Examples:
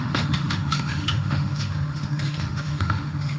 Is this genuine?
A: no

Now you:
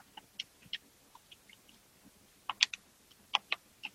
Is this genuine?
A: yes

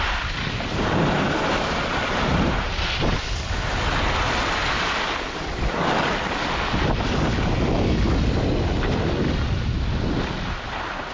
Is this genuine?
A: yes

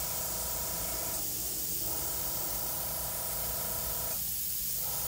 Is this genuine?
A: yes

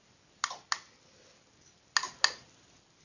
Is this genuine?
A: yes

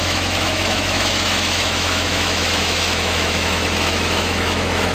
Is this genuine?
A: no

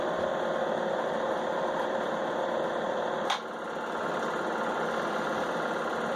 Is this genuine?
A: yes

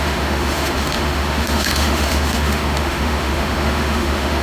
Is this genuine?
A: no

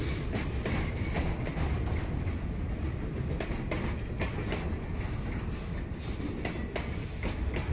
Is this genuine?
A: yes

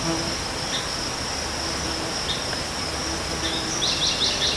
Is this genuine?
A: yes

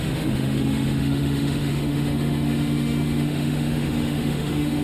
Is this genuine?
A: no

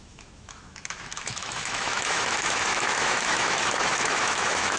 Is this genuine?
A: no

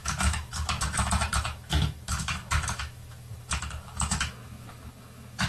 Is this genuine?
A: no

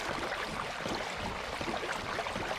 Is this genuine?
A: yes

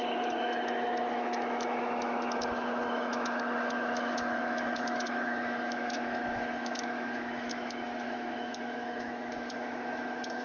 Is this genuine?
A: no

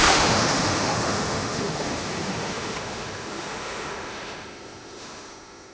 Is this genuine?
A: no